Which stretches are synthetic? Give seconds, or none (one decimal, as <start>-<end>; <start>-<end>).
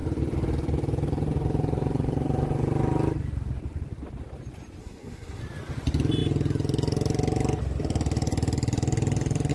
4.8-5.4